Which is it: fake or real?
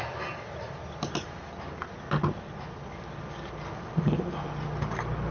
real